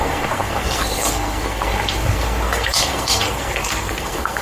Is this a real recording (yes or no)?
no